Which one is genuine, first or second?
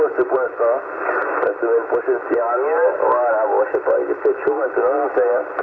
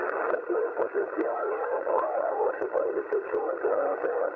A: first